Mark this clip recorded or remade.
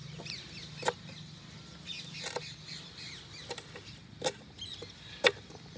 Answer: recorded